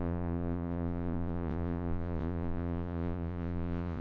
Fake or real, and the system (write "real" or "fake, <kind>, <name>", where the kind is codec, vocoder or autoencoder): fake, vocoder, Vocos